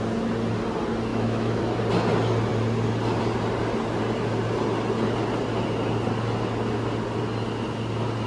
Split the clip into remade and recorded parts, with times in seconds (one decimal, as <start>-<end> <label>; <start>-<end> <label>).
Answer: 0.0-1.1 recorded; 1.1-1.6 remade; 1.6-8.3 recorded